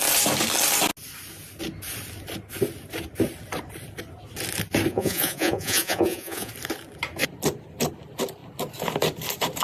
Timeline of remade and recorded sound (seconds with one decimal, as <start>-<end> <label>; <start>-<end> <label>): 0.0-4.9 recorded; 4.9-6.5 remade; 6.5-9.6 recorded